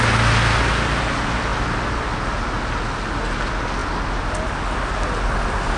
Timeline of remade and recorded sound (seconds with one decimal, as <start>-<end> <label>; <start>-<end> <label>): 0.0-5.8 recorded

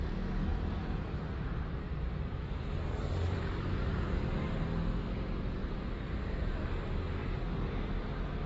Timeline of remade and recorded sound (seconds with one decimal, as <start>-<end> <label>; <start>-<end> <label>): 0.0-0.5 recorded; 0.5-4.6 remade; 4.6-5.6 recorded; 5.6-6.7 remade; 6.7-8.5 recorded

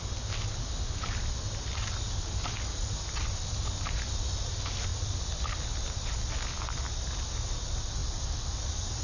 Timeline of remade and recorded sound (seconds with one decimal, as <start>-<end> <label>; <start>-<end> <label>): 0.0-4.9 recorded; 4.9-5.6 remade; 5.6-8.0 recorded; 8.0-8.6 remade; 8.6-9.0 recorded

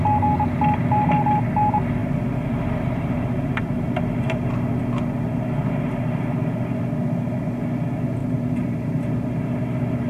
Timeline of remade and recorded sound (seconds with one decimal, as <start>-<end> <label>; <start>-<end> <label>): 0.0-2.0 recorded; 2.0-4.7 remade; 4.7-8.2 recorded; 8.2-9.0 remade; 9.0-10.1 recorded

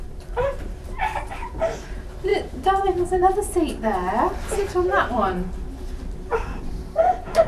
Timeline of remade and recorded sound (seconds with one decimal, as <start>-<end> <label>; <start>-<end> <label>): 0.0-7.5 remade